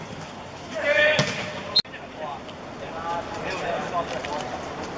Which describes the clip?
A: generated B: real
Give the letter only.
B